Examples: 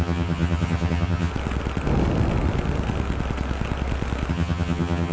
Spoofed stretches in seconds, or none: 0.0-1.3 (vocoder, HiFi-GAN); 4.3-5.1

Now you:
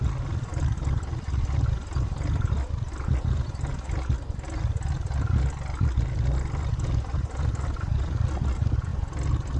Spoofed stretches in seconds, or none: 6.7-8.3 (vocoder, BigVGAN v2)

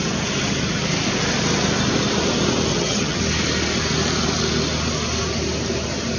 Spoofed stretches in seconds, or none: 2.7-3.2 (vocoder, HiFi-GAN)